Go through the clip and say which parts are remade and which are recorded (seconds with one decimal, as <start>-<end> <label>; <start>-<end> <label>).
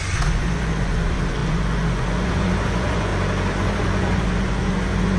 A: 0.0-3.1 remade; 3.1-3.6 recorded; 3.6-5.2 remade